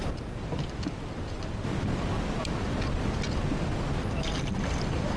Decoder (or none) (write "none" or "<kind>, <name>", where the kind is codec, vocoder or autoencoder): none